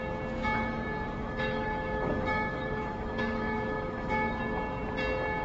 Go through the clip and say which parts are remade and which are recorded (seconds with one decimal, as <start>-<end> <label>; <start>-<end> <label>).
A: 0.0-1.2 recorded; 1.2-4.4 remade; 4.4-5.4 recorded